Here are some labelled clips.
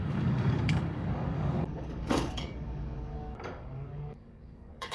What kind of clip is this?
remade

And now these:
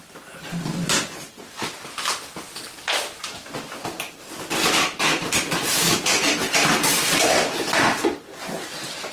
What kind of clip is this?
recorded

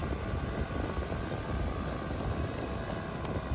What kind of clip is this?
recorded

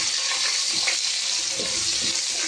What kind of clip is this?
recorded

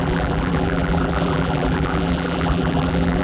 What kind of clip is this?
remade